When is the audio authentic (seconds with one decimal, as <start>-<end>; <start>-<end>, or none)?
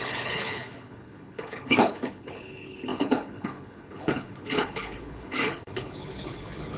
none